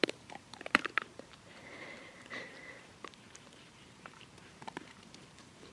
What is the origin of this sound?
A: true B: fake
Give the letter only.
B